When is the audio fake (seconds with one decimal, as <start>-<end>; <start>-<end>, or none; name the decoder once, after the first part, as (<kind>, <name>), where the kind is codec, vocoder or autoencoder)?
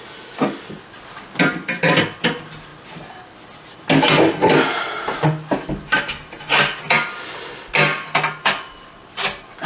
none